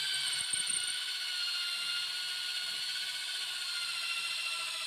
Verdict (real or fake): real